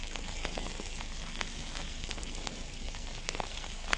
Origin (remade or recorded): remade